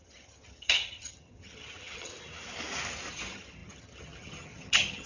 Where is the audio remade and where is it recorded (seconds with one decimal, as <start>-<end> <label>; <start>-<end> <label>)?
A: 0.0-2.1 remade; 2.1-3.1 recorded; 3.1-5.1 remade